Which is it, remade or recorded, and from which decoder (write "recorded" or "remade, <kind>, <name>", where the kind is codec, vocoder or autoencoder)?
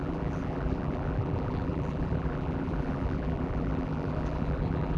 remade, vocoder, BigVGAN v2